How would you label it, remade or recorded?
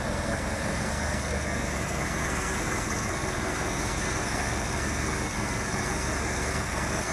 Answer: remade